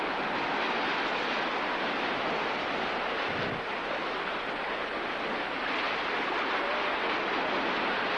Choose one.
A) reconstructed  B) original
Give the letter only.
B